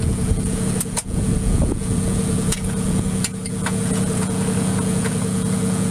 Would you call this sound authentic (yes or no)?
no